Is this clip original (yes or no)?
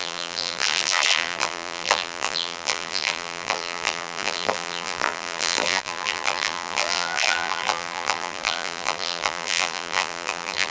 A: no